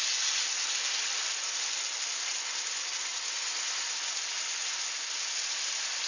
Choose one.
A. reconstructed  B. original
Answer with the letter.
B